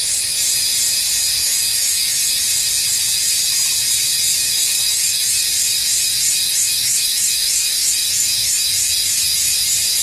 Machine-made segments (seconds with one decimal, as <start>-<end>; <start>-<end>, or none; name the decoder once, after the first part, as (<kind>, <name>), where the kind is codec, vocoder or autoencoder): 1.4-2.3 (autoencoder, DAC-VAE); 4.3-5.4; 6.3-8.7